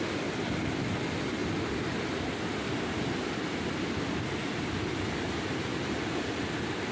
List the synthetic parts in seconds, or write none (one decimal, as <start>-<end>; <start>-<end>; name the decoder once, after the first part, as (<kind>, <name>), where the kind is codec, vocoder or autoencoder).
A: none